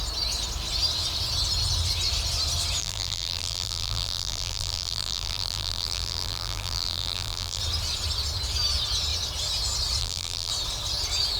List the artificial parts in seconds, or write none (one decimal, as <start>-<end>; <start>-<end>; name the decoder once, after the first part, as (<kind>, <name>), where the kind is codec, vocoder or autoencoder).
2.8-7.6 (vocoder, BigVGAN v2); 10.0-10.5